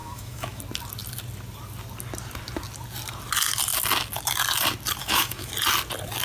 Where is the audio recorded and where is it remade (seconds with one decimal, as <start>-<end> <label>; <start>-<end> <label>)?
0.0-0.6 remade; 0.6-5.0 recorded; 5.0-5.5 remade; 5.5-6.2 recorded